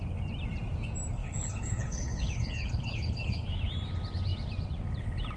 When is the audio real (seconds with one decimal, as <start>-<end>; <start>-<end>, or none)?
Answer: 0.0-1.2; 3.4-5.4